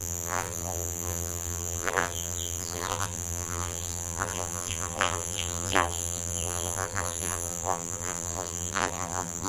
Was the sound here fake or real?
fake